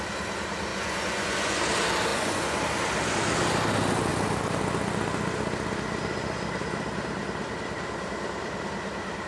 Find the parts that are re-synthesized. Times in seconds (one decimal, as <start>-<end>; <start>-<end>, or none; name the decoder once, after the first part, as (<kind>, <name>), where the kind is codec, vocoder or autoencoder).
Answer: 0.7-1.6 (vocoder, Vocos); 2.1-2.6